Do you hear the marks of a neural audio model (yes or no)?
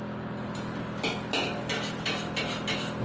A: no